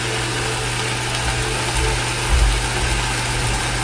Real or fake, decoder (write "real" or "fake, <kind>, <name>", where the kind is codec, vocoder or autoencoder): real